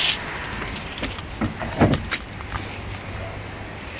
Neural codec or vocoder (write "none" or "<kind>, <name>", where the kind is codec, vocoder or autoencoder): none